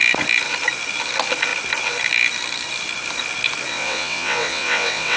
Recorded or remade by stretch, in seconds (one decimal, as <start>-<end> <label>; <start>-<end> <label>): 0.0-3.7 recorded; 3.7-5.2 remade